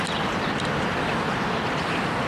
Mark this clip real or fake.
real